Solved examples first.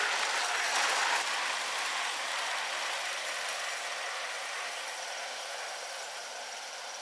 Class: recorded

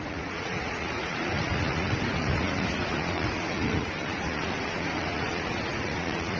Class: remade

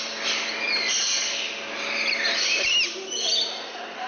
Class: recorded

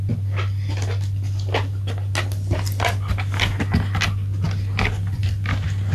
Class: recorded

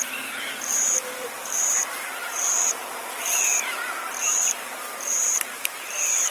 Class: remade